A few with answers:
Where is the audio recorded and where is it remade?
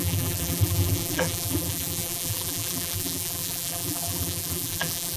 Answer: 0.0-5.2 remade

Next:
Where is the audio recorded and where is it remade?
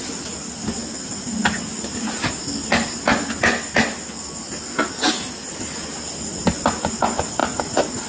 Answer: 0.0-8.1 recorded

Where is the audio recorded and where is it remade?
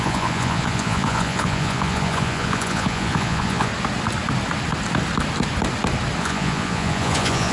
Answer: 0.0-3.7 remade; 3.7-6.2 recorded; 6.2-7.5 remade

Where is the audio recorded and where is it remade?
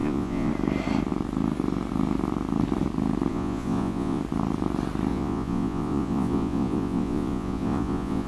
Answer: 0.0-0.5 remade; 0.5-3.3 recorded; 3.3-4.2 remade; 4.2-5.1 recorded; 5.1-8.3 remade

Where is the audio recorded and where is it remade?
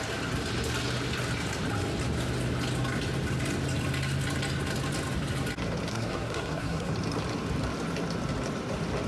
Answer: 0.0-5.9 recorded; 5.9-6.9 remade; 6.9-9.1 recorded